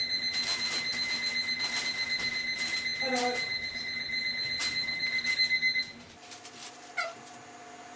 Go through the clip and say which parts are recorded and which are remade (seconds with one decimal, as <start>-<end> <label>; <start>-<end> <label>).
0.0-8.0 recorded